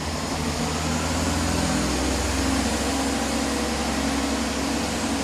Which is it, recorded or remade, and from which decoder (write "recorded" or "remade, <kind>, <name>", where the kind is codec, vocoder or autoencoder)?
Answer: recorded